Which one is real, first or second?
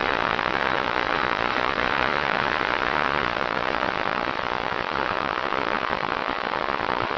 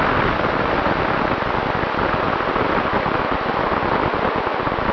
second